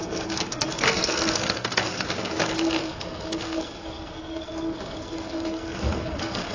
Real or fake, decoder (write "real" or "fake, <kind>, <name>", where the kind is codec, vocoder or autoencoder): fake, codec, SNAC